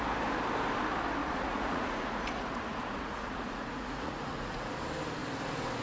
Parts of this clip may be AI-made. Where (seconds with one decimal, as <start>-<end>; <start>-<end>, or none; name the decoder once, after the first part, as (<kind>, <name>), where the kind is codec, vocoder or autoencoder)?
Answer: 1.2-4.7 (vocoder, Vocos)